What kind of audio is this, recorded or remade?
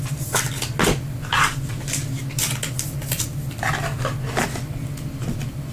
recorded